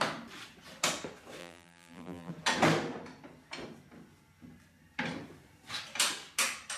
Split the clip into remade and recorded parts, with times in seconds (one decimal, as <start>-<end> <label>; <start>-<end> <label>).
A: 0.0-1.4 recorded; 1.4-2.3 remade; 2.3-6.8 recorded